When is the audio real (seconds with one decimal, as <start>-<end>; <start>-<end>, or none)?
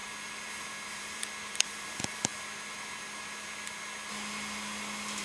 0.0-0.9; 2.3-5.2